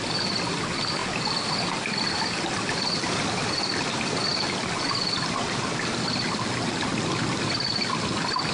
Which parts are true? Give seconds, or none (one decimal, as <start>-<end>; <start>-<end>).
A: 0.0-8.5